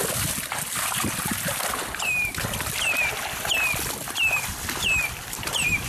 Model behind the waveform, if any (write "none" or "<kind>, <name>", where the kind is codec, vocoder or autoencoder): vocoder, BigVGAN v2